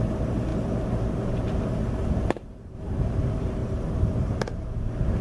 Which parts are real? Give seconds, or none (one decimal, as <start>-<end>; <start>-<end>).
0.0-2.0; 3.2-3.6; 4.8-5.2